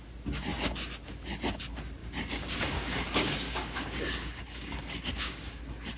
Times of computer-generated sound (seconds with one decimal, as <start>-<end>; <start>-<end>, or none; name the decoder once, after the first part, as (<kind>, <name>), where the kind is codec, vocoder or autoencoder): 2.0-5.6 (codec, DAC)

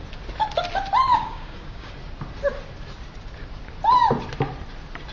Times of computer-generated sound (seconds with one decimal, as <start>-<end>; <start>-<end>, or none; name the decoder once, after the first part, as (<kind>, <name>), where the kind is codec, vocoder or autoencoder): 1.1-1.9 (codec, DAC)